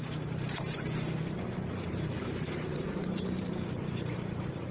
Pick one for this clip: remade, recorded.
remade